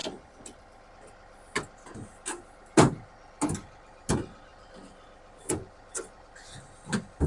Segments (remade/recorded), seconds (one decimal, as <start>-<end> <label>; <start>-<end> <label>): 0.0-0.9 remade; 0.9-7.3 recorded